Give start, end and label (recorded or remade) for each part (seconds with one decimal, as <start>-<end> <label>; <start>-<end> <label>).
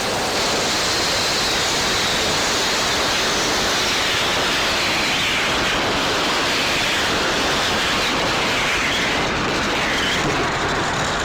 0.0-6.6 recorded; 6.6-9.5 remade; 9.5-11.2 recorded